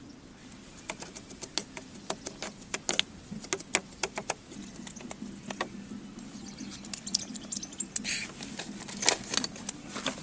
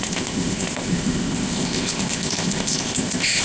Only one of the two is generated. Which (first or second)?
second